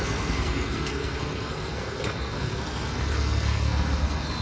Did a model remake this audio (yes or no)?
yes